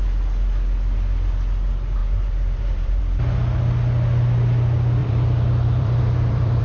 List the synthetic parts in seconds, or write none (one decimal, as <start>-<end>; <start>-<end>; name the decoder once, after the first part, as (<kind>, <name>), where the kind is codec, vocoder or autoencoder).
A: 2.0-3.0 (vocoder, BigVGAN v2); 5.0-6.6